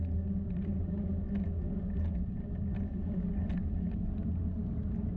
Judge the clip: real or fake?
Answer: real